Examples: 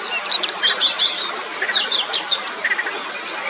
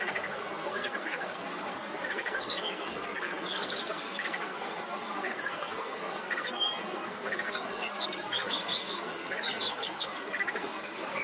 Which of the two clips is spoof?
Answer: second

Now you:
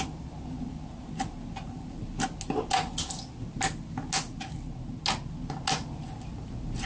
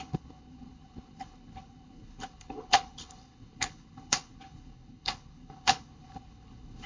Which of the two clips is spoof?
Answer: second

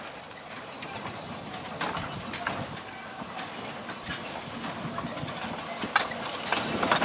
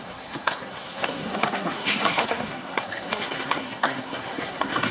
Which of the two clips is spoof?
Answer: second